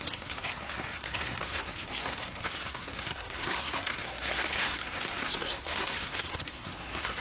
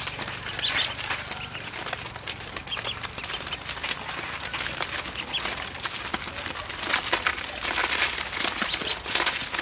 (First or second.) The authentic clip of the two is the second